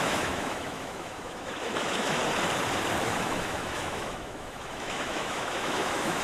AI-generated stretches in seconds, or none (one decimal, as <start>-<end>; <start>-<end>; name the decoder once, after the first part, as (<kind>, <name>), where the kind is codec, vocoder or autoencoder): 0.0-2.2 (autoencoder, DAC-VAE); 3.0-6.2